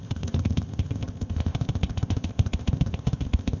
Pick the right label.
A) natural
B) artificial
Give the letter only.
B